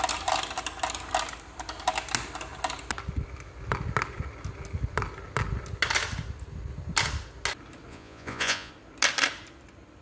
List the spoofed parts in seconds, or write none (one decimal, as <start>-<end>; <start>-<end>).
7.9-8.7